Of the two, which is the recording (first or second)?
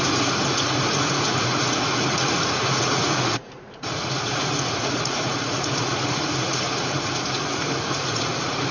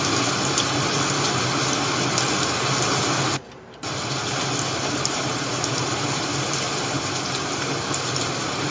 second